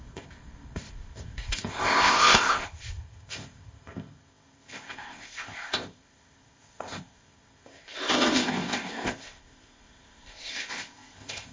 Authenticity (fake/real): fake